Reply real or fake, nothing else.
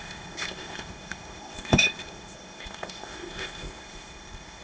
fake